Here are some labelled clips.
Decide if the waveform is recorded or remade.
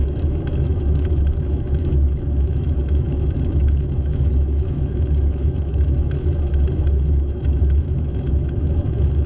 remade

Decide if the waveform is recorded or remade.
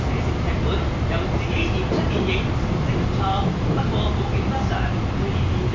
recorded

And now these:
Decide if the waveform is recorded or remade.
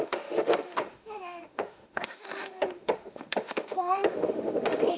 remade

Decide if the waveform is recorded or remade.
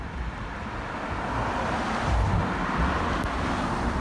recorded